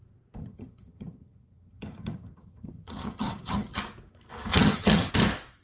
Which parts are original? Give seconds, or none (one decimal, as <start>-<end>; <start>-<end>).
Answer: 0.0-0.4; 3.8-4.5; 5.1-5.6